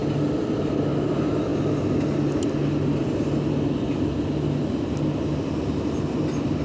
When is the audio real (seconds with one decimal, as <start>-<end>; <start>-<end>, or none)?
0.0-6.6